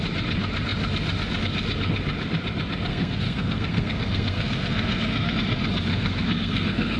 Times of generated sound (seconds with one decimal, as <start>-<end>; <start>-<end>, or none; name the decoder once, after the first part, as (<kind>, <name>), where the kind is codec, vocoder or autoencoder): 2.9-5.3 (codec, SNAC); 5.9-7.0